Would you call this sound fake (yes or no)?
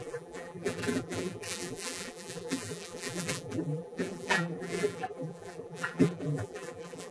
yes